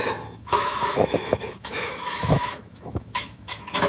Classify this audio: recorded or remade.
remade